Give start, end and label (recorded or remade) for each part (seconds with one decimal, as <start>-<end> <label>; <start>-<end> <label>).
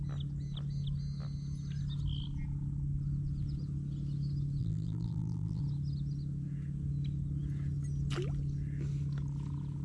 0.0-4.6 recorded; 4.6-5.6 remade; 5.6-9.8 recorded